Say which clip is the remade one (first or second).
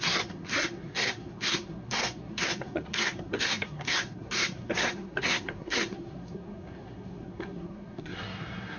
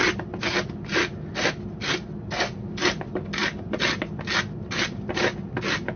first